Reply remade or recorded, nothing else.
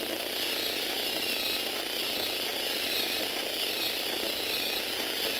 recorded